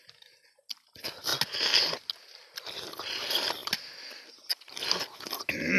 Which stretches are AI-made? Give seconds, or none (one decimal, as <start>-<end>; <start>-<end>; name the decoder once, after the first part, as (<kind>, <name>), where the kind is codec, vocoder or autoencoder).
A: none